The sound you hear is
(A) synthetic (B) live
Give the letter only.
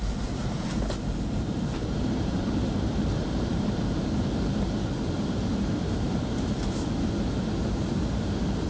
A